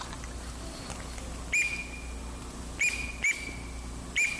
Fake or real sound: real